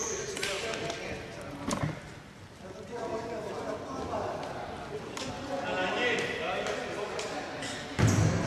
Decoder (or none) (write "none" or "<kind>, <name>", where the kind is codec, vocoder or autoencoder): none